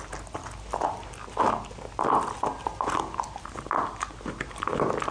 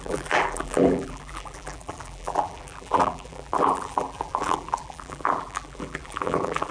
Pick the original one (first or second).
first